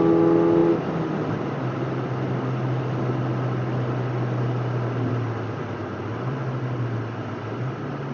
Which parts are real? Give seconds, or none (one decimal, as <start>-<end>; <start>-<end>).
0.0-8.1